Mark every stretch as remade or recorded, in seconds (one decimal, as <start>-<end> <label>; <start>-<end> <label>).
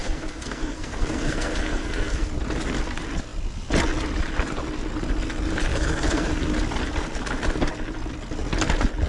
0.0-2.3 remade; 2.3-5.7 recorded; 5.7-6.3 remade; 6.3-9.1 recorded